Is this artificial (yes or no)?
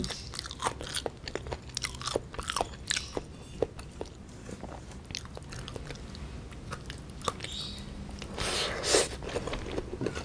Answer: no